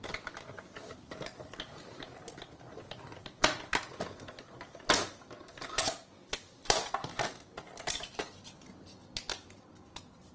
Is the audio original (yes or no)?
yes